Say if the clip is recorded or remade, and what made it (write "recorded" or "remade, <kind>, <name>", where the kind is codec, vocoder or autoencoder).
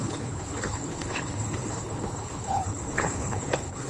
remade, codec, HILCodec